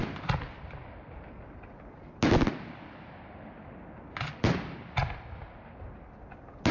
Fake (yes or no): no